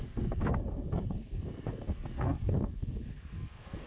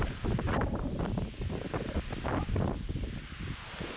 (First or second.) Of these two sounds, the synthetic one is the first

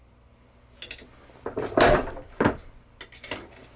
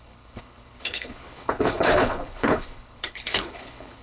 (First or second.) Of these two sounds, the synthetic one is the second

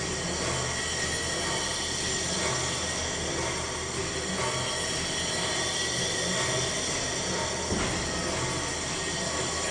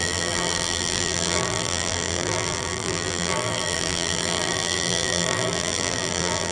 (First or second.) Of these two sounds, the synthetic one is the second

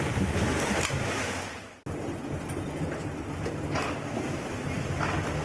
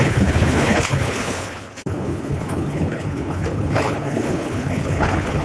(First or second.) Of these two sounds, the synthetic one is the second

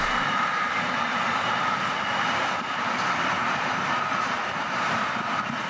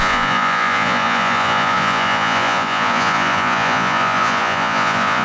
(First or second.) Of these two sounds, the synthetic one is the second